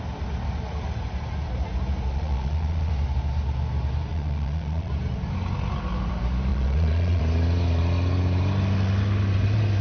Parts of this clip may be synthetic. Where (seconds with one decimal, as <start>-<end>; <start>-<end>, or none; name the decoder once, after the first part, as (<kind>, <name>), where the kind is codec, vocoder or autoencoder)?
2.1-2.9 (vocoder, Vocos); 4.1-4.9; 6.5-7.2